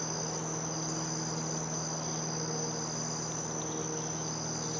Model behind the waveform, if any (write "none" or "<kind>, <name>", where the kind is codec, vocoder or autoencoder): none